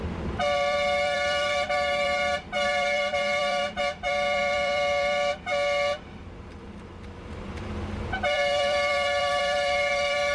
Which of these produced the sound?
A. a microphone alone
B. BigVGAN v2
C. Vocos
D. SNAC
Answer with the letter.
B